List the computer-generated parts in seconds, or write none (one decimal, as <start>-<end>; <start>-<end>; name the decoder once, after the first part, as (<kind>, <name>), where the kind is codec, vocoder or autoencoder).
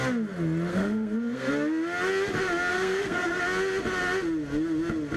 0.7-1.5 (codec, SNAC); 2.7-3.4